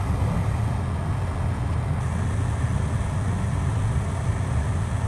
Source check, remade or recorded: recorded